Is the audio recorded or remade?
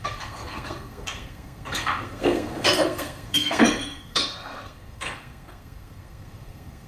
remade